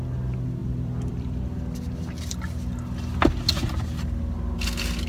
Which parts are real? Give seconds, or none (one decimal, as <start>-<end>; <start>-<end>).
0.0-0.6; 1.4-5.1